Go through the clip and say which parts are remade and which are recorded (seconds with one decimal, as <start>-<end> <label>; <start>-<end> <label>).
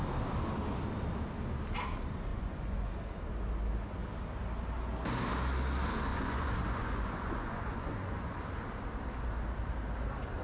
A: 0.0-2.3 recorded; 2.3-2.9 remade; 2.9-6.1 recorded; 6.1-8.3 remade; 8.3-10.4 recorded